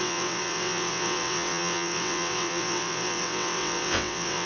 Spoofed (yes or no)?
yes